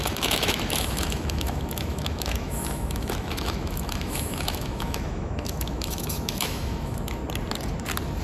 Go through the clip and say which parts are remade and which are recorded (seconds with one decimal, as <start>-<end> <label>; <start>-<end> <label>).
0.0-7.2 remade; 7.2-8.2 recorded